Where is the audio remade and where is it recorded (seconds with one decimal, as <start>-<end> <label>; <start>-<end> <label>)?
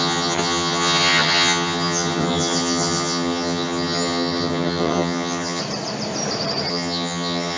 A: 0.0-5.6 remade; 5.6-6.7 recorded; 6.7-7.6 remade